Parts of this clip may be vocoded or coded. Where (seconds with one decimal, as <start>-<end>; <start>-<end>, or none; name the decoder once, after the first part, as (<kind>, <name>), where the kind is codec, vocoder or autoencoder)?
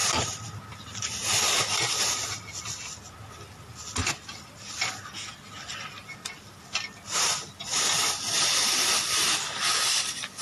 none